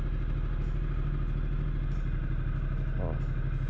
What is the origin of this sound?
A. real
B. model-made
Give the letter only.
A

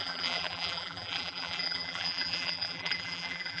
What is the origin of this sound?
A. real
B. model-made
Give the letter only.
B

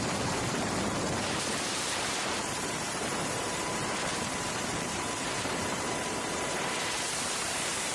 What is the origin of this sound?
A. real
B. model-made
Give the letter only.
B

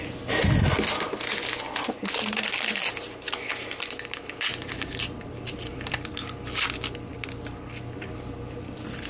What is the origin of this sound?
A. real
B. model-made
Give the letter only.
A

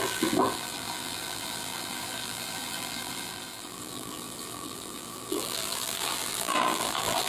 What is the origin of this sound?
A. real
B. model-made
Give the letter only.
B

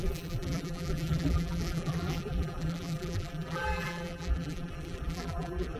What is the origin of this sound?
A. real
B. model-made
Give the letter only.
B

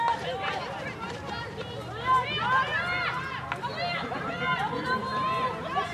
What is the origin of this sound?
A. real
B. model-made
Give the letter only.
A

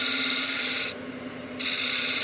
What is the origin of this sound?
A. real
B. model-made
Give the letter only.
A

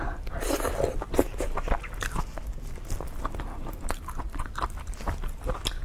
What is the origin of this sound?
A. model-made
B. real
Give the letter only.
B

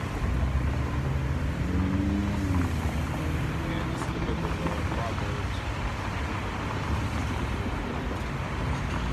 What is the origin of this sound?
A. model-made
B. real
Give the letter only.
B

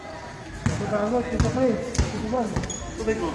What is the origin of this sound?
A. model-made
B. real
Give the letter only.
B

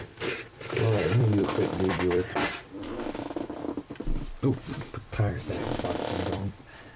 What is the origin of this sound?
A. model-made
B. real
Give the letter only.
A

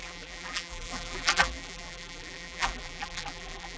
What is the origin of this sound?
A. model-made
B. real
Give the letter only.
A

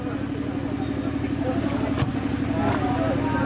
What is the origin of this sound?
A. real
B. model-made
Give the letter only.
A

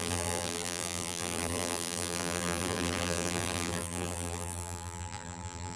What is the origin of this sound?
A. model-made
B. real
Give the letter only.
A